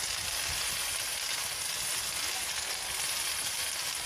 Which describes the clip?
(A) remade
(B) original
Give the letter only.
B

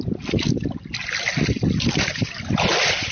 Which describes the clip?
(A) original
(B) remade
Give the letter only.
A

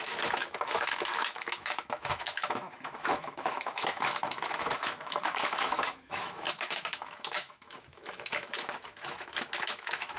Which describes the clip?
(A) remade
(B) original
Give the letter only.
A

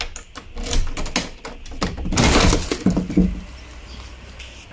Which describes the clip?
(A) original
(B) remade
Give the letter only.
A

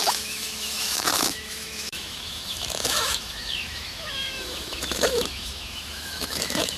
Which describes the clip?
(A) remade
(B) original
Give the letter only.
A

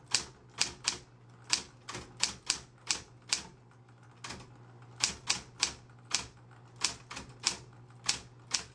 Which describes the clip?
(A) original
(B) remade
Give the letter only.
A